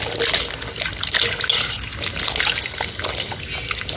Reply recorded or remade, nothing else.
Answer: recorded